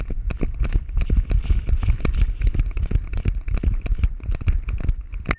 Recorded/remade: recorded